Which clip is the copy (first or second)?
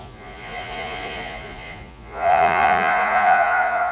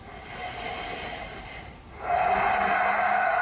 first